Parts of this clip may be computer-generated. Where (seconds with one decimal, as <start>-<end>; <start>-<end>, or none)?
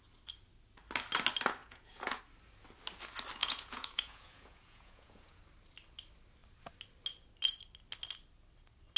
1.6-2.2; 3.4-5.4